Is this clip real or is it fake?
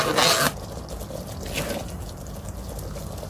real